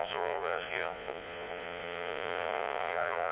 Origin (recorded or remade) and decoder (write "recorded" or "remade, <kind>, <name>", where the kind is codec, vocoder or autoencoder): remade, vocoder, Vocos